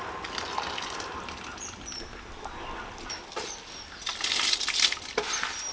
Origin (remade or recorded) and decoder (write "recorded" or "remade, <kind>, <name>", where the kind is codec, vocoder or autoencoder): recorded